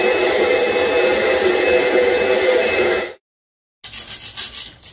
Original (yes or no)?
yes